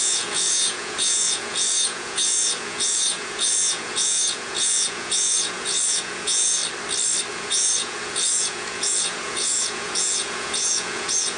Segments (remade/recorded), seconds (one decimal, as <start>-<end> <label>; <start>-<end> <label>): 0.0-6.6 remade; 6.6-7.3 recorded; 7.3-11.4 remade